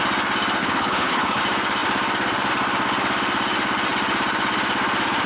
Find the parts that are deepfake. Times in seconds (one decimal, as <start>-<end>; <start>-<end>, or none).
0.6-1.4